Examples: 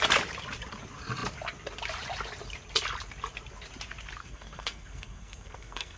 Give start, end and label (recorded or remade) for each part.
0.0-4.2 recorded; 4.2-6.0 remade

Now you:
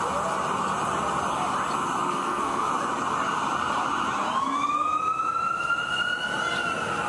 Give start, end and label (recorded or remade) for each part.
0.0-2.0 recorded; 2.0-2.7 remade; 2.7-7.1 recorded

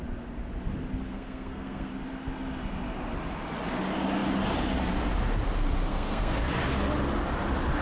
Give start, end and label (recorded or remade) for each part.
0.0-1.1 recorded; 1.1-1.9 remade; 1.9-5.9 recorded; 5.9-6.4 remade; 6.4-7.8 recorded

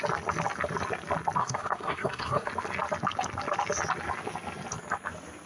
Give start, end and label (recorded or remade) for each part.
0.0-1.4 recorded; 1.4-2.5 remade; 2.5-5.5 recorded

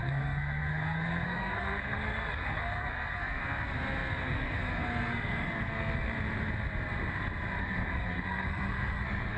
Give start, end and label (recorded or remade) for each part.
0.0-3.4 remade; 3.4-4.2 recorded; 4.2-6.1 remade; 6.1-7.6 recorded; 7.6-9.4 remade

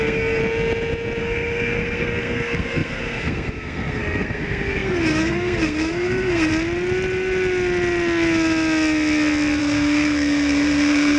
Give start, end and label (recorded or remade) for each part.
0.0-0.4 remade; 0.4-1.2 recorded; 1.2-6.5 remade; 6.5-9.6 recorded; 9.6-11.2 remade

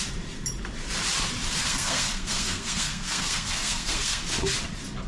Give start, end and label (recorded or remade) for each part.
0.0-1.6 recorded; 1.6-4.2 remade; 4.2-5.1 recorded